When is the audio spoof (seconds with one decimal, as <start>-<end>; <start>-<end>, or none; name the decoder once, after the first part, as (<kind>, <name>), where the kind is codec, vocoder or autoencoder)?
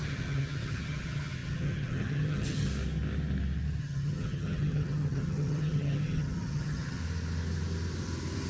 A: 0.0-2.7 (vocoder, HiFi-GAN); 3.8-7.0